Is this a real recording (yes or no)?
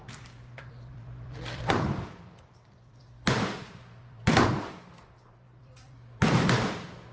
no